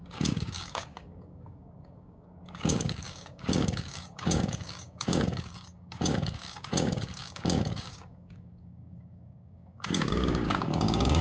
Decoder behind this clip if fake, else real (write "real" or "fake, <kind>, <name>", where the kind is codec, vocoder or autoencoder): fake, codec, DAC